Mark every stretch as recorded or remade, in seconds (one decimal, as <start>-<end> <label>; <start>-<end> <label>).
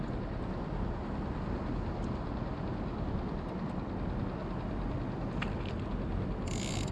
0.0-6.9 recorded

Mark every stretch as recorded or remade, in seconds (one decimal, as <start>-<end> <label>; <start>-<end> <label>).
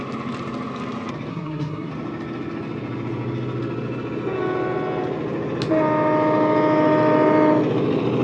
0.0-1.3 recorded; 1.3-1.9 remade; 1.9-8.2 recorded